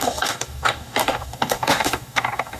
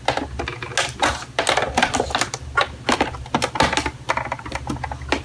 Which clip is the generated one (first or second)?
first